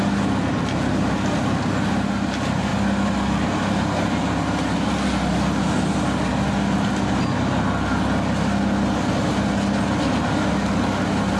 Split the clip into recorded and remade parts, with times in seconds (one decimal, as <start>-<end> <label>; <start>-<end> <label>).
0.0-11.4 recorded